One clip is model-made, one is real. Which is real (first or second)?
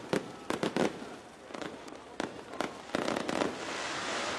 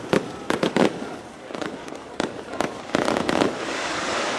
first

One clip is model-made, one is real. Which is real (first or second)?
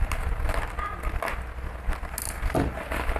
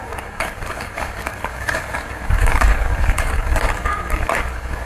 first